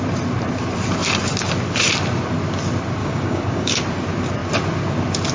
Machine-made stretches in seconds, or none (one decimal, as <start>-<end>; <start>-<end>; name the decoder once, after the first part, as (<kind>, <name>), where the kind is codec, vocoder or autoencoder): 3.0-3.8 (codec, DAC)